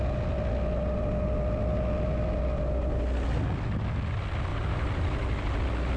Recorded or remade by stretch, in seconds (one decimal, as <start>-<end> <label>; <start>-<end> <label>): 0.0-4.5 recorded; 4.5-5.6 remade; 5.6-6.0 recorded